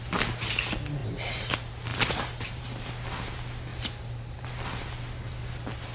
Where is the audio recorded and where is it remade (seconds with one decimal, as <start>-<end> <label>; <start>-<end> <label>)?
0.0-1.0 recorded; 1.0-1.5 remade; 1.5-1.9 recorded; 1.9-2.9 remade; 2.9-3.7 recorded; 3.7-4.5 remade; 4.5-5.9 recorded